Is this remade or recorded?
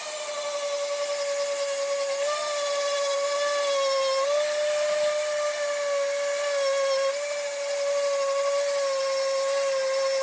recorded